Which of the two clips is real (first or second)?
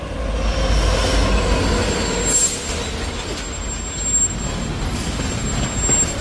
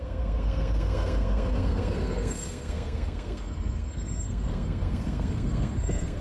first